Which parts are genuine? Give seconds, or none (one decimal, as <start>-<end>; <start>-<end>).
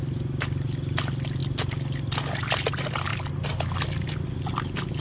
0.0-5.0